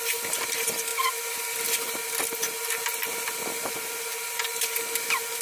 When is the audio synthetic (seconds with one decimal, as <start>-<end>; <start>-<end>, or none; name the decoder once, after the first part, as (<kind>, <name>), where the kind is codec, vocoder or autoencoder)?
0.0-5.4 (vocoder, BigVGAN v2)